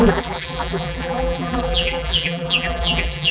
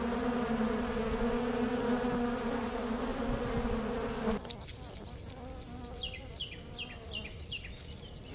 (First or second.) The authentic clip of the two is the second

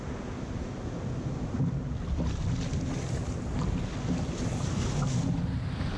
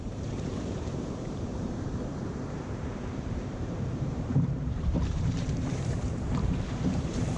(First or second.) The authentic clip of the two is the first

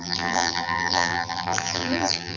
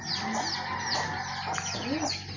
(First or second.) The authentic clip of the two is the second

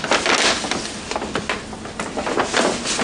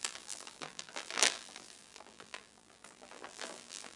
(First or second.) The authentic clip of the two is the first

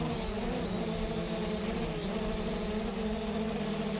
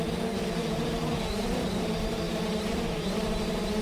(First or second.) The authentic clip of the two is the first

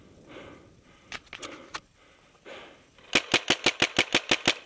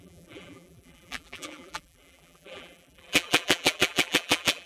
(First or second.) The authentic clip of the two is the first